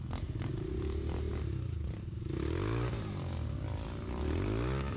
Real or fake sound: real